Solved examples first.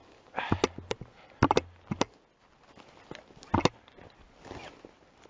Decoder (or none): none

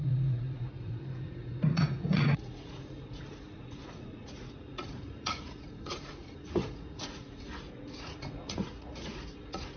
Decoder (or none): vocoder, Vocos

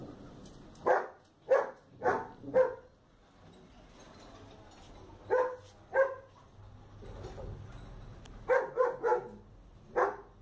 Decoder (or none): none